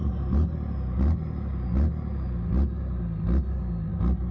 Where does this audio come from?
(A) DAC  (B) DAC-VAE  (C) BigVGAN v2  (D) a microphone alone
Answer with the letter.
D